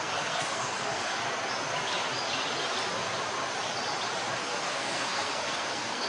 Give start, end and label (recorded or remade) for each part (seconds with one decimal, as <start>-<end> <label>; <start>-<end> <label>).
0.0-1.2 remade; 1.2-4.4 recorded; 4.4-6.1 remade